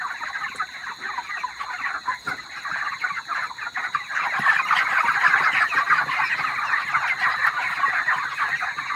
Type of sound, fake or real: real